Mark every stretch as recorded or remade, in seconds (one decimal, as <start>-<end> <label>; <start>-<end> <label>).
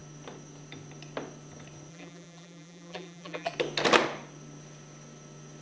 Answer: 0.0-1.9 recorded; 1.9-3.5 remade; 3.5-5.6 recorded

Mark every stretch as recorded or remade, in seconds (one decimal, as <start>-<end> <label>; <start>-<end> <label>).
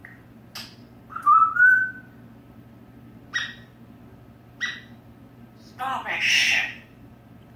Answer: 0.0-2.3 recorded; 2.3-7.6 remade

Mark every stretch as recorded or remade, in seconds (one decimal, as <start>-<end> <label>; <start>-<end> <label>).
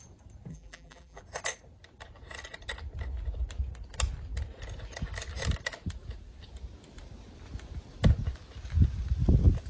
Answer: 0.0-0.5 recorded; 0.5-1.2 remade; 1.2-9.7 recorded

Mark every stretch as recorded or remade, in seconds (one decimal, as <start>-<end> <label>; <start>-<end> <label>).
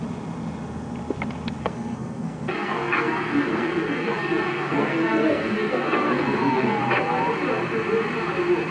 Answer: 0.0-1.6 recorded; 1.6-6.8 remade; 6.8-8.7 recorded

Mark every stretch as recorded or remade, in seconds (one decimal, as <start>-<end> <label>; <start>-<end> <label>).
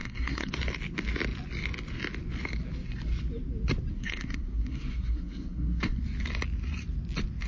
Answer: 0.0-0.5 remade; 0.5-3.9 recorded; 3.9-6.0 remade; 6.0-7.5 recorded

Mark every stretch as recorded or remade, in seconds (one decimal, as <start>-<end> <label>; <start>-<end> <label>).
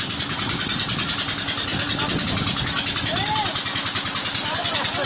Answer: 0.0-5.1 recorded